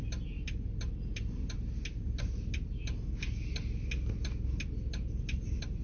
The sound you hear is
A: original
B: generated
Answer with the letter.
A